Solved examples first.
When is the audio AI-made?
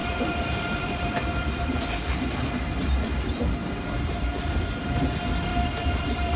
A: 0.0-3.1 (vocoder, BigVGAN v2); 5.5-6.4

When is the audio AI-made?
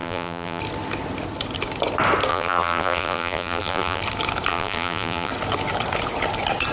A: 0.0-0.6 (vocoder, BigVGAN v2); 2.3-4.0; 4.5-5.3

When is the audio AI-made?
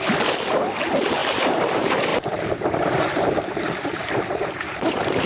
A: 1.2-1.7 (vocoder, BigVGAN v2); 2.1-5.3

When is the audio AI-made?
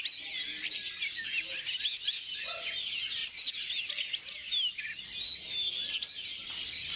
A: 3.2-3.9 (vocoder, BigVGAN v2); 4.4-5.0; 5.4-7.0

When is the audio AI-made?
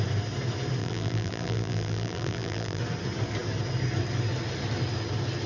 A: 0.8-2.8 (vocoder, BigVGAN v2)